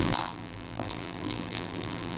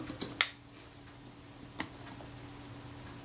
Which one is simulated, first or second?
first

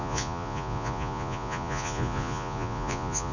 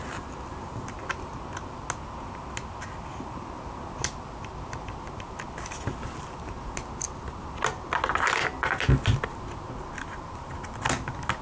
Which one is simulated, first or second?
first